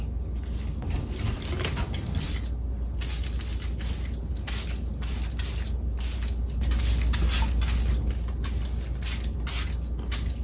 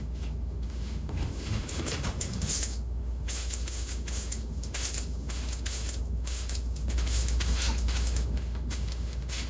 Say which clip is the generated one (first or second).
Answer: second